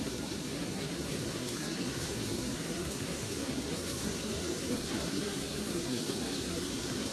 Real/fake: fake